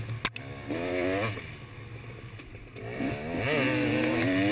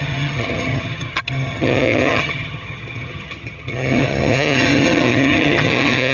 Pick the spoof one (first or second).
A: second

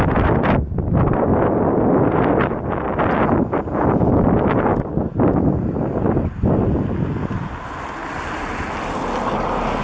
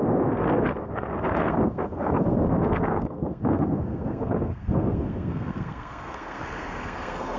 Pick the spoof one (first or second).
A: second